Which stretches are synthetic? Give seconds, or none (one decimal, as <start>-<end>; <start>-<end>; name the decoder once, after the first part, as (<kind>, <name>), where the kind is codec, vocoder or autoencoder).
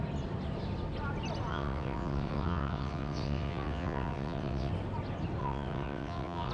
1.5-4.7 (vocoder, WaveNeXt); 5.4-6.5